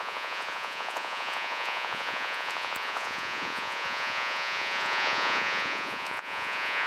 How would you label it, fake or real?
fake